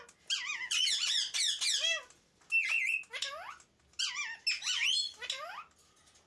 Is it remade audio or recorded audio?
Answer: recorded